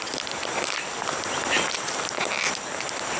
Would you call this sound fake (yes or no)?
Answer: no